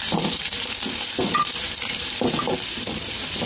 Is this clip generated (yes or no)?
yes